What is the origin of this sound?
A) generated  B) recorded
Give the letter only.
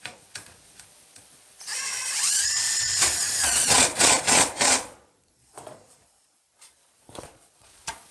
A